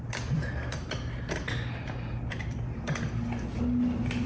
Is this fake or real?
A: real